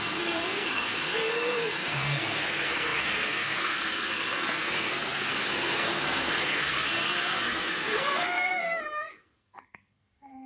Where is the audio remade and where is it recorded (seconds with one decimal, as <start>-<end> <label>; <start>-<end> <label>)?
0.0-10.5 remade